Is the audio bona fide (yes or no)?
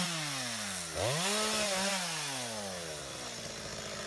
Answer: yes